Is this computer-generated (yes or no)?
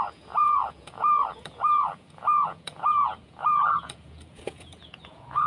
yes